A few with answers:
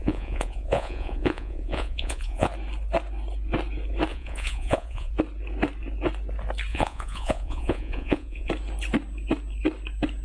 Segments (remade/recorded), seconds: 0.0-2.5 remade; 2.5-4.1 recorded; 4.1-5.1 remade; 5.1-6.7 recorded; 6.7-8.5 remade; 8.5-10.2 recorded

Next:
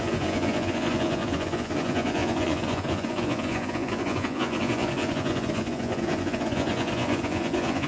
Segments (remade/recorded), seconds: 0.0-7.9 remade

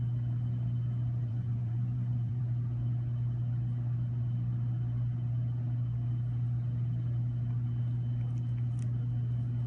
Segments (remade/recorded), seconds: 0.0-1.3 recorded; 1.3-2.4 remade; 2.4-9.7 recorded

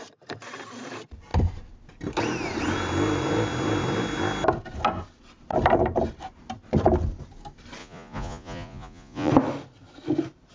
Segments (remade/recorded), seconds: 0.0-7.8 recorded; 7.8-9.3 remade; 9.3-10.5 recorded

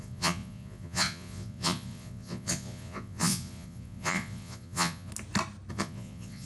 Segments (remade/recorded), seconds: 0.0-5.1 remade; 5.1-5.7 recorded; 5.7-6.5 remade

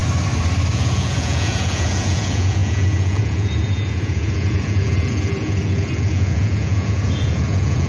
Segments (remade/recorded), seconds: 0.0-0.7 recorded; 0.7-7.9 remade